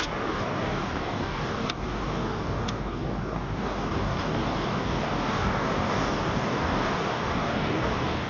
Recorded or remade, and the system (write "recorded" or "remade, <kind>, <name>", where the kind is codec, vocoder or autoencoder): remade, codec, DAC